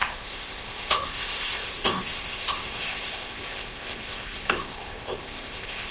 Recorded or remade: remade